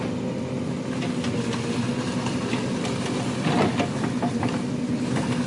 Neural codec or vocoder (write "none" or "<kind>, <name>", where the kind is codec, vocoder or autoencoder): none